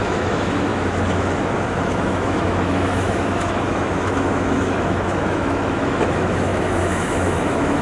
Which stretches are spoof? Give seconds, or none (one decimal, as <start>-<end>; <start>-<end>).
0.0-7.8